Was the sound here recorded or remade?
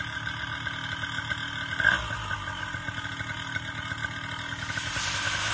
recorded